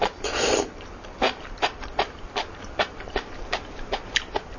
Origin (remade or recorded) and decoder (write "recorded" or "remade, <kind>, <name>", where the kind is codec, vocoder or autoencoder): remade, vocoder, BigVGAN v2